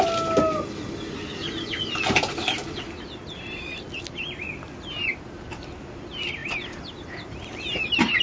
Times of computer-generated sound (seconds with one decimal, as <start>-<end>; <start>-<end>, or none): none